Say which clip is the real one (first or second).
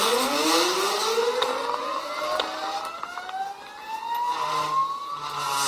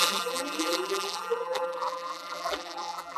first